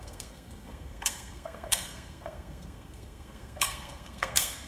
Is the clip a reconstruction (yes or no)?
yes